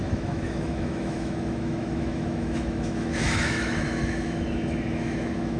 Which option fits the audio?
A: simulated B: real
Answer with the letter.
A